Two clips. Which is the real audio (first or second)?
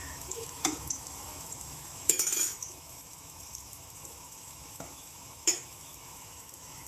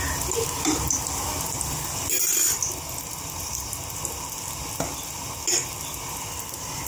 second